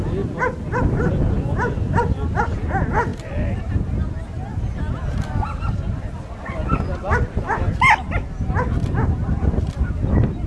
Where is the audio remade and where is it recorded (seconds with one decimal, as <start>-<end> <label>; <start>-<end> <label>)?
0.0-10.5 recorded